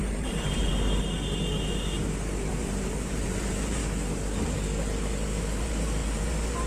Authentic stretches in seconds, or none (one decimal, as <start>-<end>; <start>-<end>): 0.7-2.5; 3.8-5.6